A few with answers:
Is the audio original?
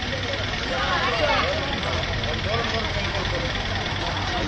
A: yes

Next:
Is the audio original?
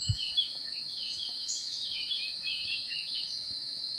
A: no